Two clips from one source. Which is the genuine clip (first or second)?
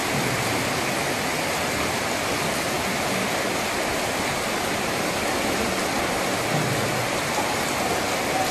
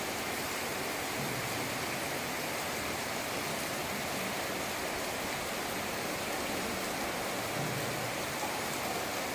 second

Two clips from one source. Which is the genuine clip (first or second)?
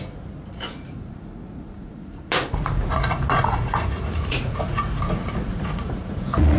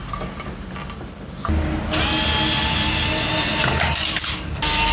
second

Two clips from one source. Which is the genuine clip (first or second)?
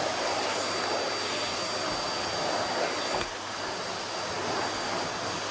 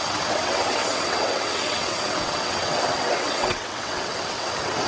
first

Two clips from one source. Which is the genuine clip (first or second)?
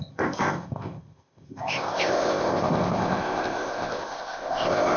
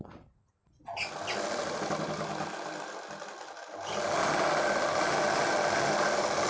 second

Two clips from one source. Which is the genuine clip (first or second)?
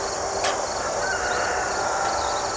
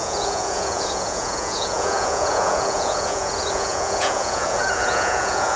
first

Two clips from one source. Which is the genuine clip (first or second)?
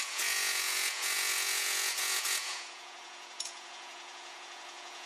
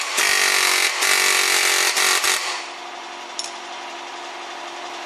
second